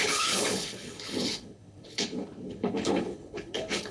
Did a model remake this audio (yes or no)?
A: yes